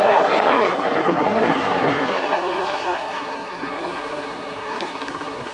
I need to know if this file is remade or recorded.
remade